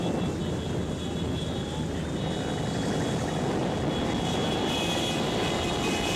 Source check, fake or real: real